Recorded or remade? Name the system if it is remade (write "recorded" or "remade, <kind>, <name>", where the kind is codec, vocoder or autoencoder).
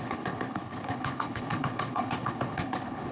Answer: remade, codec, HILCodec